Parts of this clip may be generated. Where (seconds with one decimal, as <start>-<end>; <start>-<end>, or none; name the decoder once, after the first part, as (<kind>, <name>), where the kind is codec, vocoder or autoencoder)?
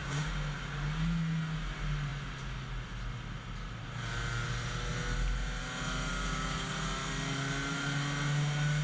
0.0-0.7 (codec, DAC); 6.1-6.7